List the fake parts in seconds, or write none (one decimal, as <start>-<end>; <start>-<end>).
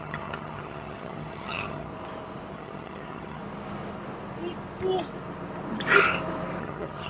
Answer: 0.0-1.9; 2.5-3.4; 6.6-7.1